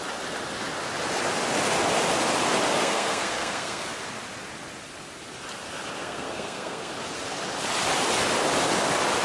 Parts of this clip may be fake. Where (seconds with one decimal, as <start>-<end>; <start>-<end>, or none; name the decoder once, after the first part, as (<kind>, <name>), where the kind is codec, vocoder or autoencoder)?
2.8-3.9 (codec, SNAC); 6.0-6.9